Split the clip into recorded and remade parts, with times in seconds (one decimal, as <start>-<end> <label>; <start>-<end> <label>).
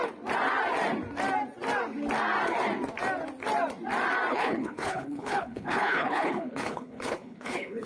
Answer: 0.0-4.3 recorded; 4.3-7.9 remade